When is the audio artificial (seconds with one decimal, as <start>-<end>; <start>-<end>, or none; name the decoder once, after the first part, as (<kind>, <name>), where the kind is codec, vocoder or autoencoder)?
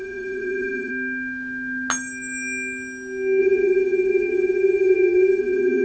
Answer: 0.0-0.9 (vocoder, Vocos); 3.4-5.8